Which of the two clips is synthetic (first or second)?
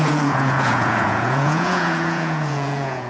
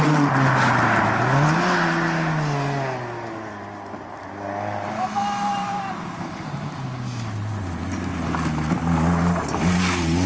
first